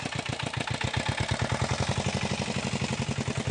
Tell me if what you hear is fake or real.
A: real